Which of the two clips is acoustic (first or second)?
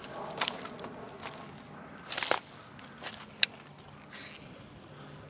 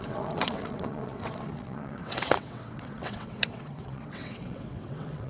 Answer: first